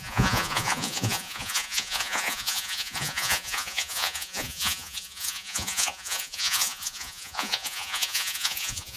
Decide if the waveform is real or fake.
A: fake